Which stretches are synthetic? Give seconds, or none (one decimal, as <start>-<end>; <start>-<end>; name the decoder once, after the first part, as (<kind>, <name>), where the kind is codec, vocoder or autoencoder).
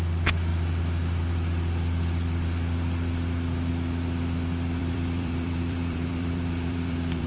4.8-7.3 (vocoder, BigVGAN v2)